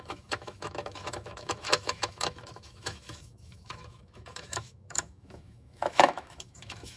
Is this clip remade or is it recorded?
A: remade